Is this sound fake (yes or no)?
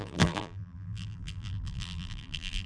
yes